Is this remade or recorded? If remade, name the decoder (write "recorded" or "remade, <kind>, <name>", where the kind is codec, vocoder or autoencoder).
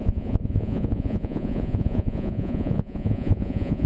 remade, vocoder, Vocos